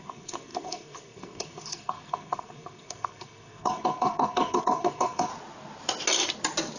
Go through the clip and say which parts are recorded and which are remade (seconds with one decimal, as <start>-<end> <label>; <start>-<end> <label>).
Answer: 0.0-5.3 remade; 5.3-6.8 recorded